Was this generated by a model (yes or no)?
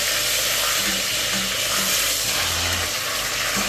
no